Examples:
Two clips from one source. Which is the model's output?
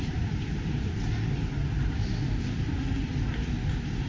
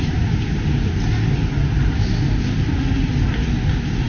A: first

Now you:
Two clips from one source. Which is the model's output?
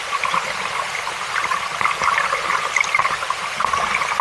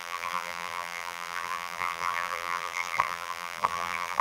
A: second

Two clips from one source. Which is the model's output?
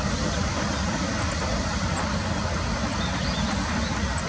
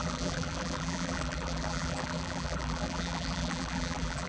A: second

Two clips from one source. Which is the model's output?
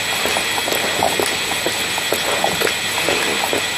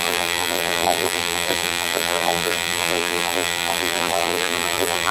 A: second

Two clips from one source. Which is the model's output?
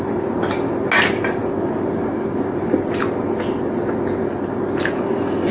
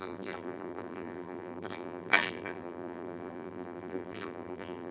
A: second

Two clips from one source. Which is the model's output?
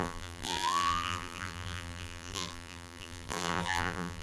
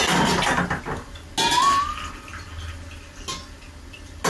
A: first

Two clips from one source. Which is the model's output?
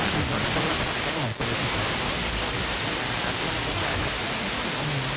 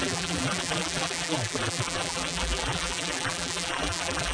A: second